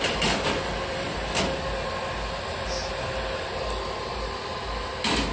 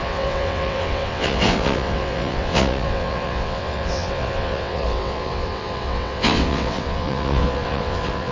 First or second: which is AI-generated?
second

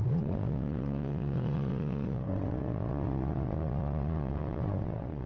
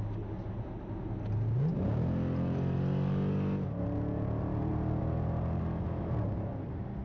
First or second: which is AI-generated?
first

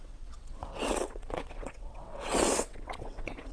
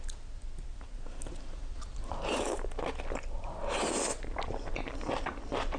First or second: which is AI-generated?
first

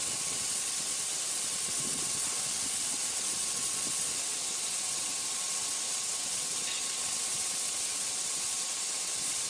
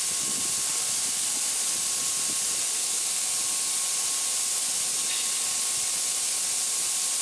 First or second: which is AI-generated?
first